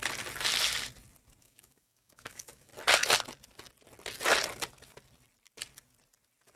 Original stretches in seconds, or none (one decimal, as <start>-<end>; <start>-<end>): 0.0-1.4; 2.7-6.6